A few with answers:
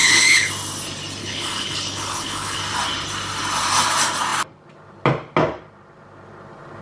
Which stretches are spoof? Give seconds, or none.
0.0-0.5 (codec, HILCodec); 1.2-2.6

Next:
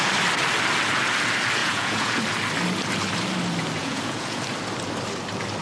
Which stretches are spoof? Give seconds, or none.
1.6-2.2 (vocoder, Vocos); 3.8-4.4

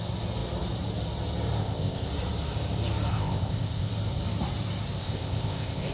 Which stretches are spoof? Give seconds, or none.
1.6-2.1 (codec, ZipCodec); 3.1-3.9; 5.0-5.9

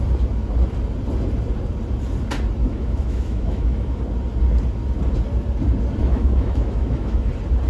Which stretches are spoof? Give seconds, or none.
2.6-4.0 (autoencoder, DAC-VAE); 6.0-7.3

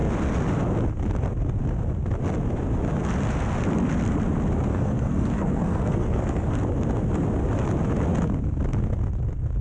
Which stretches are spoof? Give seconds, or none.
4.7-6.5 (codec, SNAC)

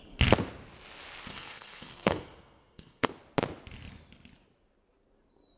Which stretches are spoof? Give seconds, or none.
1.3-3.1 (codec, SNAC)